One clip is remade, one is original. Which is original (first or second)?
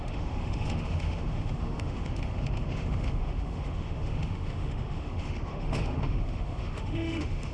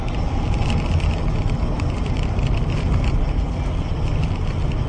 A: second